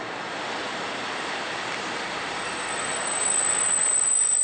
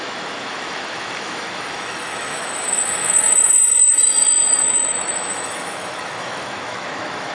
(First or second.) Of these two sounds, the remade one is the second